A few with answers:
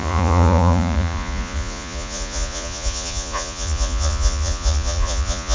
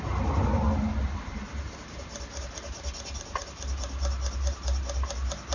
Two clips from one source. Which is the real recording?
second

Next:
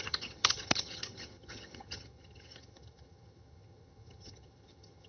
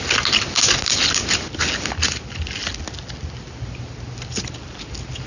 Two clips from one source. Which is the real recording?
second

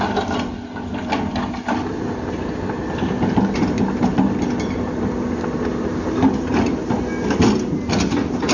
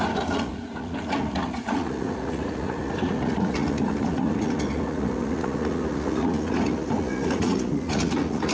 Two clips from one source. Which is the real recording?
first